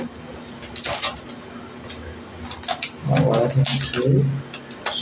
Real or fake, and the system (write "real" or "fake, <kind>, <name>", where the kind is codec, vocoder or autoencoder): real